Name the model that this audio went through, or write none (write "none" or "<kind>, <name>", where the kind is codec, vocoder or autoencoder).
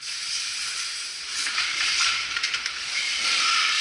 vocoder, BigVGAN v2